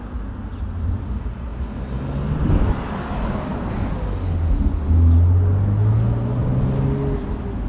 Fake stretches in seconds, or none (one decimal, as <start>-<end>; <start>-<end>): none